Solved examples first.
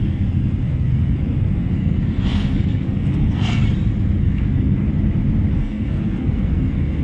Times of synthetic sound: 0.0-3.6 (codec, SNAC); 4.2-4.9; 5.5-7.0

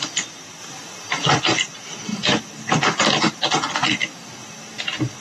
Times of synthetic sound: 0.6-1.3 (vocoder, BigVGAN v2)